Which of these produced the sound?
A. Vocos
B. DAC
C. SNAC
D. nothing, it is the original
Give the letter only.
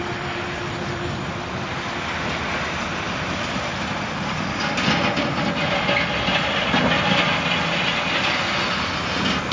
D